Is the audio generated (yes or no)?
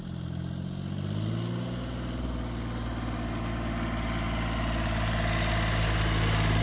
no